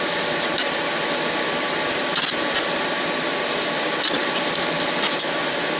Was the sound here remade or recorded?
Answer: recorded